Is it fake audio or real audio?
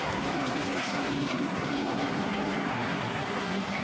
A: fake